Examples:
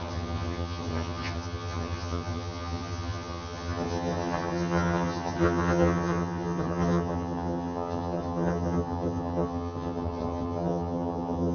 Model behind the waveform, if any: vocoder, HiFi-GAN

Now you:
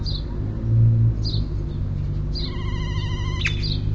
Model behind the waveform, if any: none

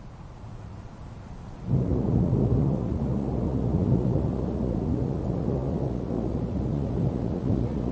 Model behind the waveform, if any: vocoder, Vocos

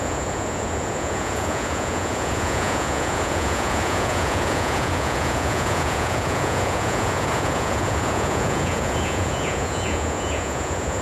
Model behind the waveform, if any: vocoder, Vocos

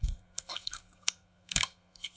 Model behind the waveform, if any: codec, SNAC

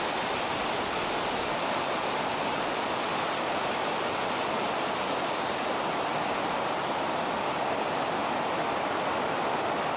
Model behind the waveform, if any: none